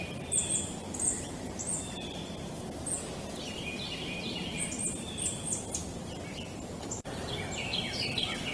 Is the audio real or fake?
real